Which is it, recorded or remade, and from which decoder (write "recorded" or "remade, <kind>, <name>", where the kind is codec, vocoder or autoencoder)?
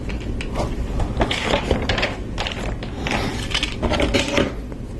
recorded